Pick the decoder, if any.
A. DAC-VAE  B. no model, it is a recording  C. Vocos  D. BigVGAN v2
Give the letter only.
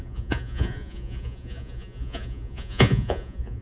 C